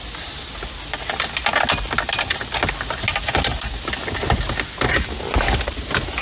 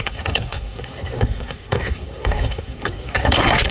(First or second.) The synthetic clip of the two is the second